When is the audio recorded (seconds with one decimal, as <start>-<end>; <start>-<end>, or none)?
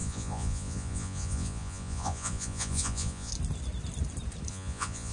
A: 3.3-4.5